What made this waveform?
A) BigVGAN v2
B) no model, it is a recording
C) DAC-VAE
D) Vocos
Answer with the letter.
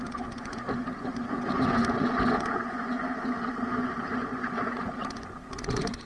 D